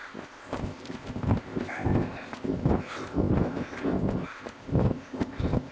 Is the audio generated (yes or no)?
yes